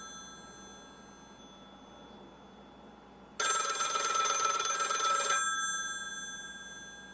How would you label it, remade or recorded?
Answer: recorded